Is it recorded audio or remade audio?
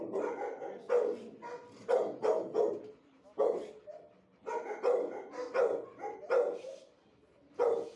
recorded